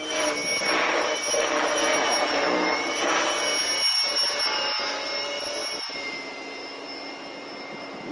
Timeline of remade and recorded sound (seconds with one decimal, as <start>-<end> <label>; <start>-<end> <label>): 0.0-8.1 recorded